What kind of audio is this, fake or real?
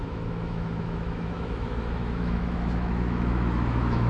fake